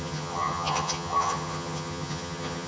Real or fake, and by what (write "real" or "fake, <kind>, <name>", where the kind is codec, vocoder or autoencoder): fake, vocoder, HiFi-GAN